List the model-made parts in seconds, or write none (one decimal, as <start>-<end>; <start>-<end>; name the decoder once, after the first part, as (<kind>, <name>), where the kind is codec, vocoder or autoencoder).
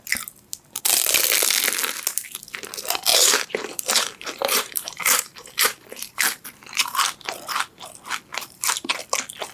3.1-7.0 (vocoder, BigVGAN v2); 8.3-9.0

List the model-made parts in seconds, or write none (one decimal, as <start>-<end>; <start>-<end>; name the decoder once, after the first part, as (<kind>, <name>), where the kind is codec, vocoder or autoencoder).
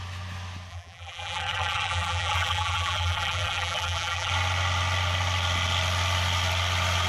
0.7-4.3 (vocoder, BigVGAN v2)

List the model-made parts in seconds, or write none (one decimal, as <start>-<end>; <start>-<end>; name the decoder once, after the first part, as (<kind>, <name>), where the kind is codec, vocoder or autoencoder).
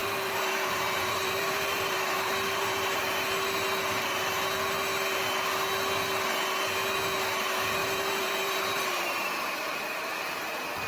0.0-3.0 (vocoder, BigVGAN v2); 7.8-10.0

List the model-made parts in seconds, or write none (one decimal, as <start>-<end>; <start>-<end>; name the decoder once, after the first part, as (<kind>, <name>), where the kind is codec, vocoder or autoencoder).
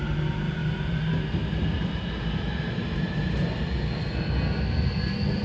0.6-3.8 (vocoder, BigVGAN v2)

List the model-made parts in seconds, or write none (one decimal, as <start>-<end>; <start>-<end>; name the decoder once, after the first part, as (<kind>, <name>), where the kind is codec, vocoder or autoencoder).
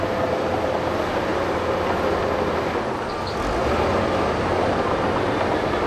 none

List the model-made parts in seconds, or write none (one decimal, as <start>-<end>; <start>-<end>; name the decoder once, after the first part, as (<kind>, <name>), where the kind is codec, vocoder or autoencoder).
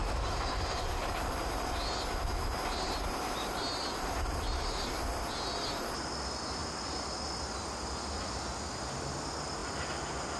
0.0-5.0 (vocoder, BigVGAN v2)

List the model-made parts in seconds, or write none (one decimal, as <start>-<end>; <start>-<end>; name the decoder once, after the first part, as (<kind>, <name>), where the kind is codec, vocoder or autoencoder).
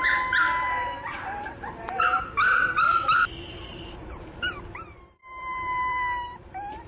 0.0-6.9 (vocoder, BigVGAN v2)